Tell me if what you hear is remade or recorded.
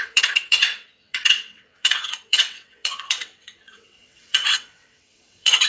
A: remade